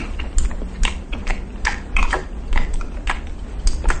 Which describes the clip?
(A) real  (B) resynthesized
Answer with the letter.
A